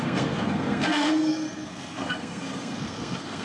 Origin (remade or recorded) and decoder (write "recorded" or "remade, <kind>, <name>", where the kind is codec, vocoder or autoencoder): remade, codec, SNAC